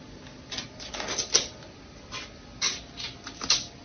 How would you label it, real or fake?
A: real